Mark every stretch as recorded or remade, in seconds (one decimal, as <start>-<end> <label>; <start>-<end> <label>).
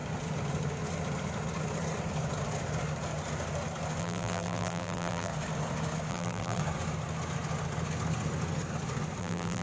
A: 0.0-4.0 recorded; 4.0-5.3 remade; 5.3-6.1 recorded; 6.1-6.6 remade; 6.6-9.2 recorded; 9.2-9.6 remade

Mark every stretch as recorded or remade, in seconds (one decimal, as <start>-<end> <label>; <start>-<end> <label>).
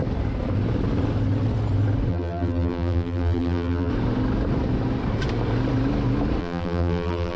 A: 0.0-2.1 recorded; 2.1-3.9 remade; 3.9-6.4 recorded; 6.4-7.4 remade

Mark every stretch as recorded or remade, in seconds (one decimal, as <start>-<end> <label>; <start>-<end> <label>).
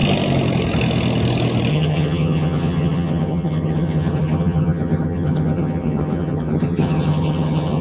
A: 0.0-1.7 recorded; 1.7-7.8 remade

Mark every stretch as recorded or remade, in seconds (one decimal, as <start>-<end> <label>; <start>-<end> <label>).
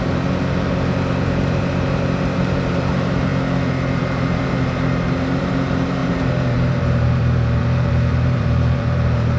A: 0.0-3.3 remade; 3.3-4.0 recorded; 4.0-9.4 remade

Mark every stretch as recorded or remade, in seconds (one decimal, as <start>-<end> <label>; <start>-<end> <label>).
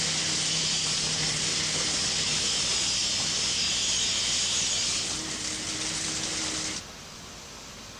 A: 0.0-8.0 recorded